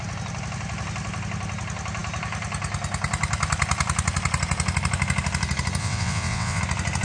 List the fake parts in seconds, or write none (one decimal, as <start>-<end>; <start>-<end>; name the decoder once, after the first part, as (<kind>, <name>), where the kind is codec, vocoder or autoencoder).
5.8-6.6 (vocoder, WaveNeXt)